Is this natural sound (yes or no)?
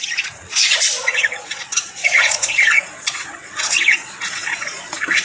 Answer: no